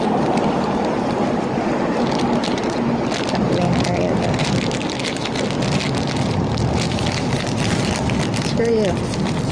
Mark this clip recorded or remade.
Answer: recorded